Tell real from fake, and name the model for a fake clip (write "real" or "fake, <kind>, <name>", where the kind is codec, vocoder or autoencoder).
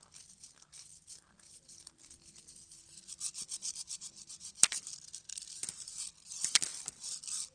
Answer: fake, vocoder, BigVGAN v2